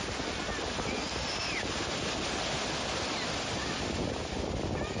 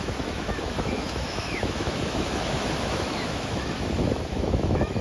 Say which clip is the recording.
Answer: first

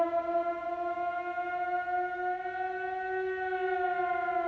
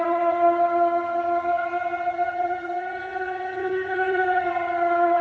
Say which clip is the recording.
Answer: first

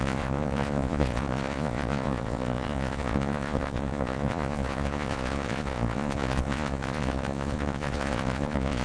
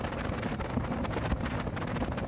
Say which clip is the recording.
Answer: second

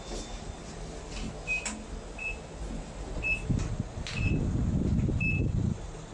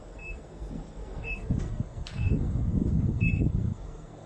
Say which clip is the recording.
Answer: first